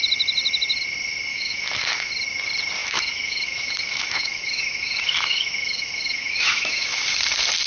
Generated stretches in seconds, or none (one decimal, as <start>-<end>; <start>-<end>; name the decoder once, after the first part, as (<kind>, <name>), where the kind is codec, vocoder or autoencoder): 1.3-2.1 (autoencoder, DAC-VAE); 2.8-7.0